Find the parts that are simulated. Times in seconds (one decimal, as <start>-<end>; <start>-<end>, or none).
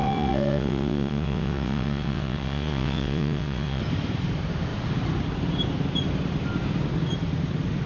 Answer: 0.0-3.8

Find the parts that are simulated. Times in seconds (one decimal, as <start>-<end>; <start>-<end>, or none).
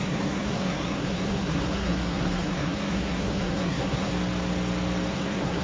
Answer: 0.0-4.1; 5.1-5.6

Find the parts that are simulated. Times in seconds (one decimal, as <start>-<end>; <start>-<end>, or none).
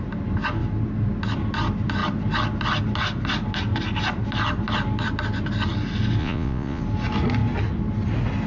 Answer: 6.2-6.8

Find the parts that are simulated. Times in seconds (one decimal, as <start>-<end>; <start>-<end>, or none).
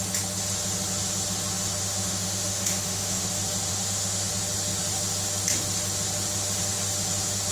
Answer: 1.8-3.3; 3.7-4.3